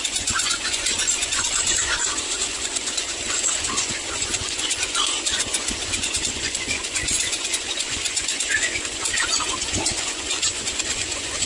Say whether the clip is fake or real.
fake